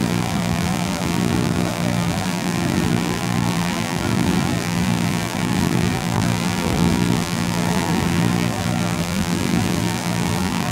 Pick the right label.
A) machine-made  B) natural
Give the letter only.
A